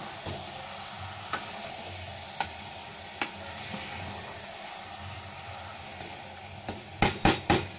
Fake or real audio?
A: real